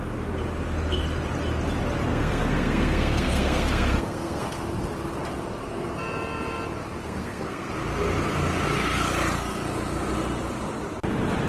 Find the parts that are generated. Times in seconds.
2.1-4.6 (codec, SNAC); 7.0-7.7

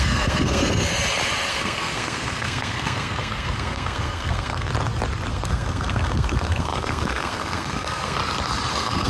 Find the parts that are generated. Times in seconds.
0.0-0.9 (codec, SNAC); 1.5-4.7; 5.3-8.2; 8.7-9.1

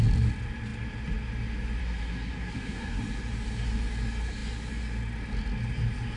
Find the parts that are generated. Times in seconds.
1.8-3.0 (codec, SNAC)

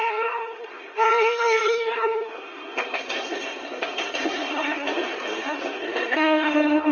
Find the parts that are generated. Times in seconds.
0.0-6.9 (codec, SNAC)

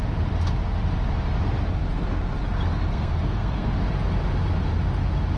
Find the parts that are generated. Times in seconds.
2.9-3.7 (codec, SNAC)